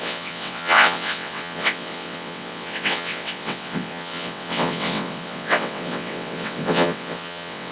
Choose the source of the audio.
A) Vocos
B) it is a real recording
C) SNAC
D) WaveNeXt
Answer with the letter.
D